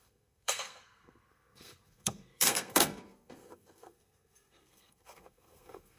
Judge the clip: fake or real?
fake